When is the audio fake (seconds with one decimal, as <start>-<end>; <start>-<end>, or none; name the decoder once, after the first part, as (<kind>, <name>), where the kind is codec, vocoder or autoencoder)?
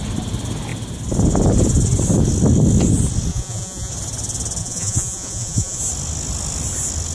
3.3-3.9 (vocoder, Vocos); 4.6-5.8